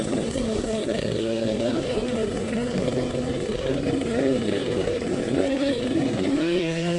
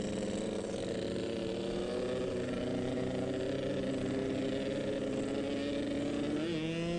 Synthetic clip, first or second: first